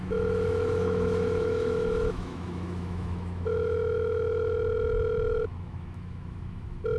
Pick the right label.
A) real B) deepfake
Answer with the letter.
B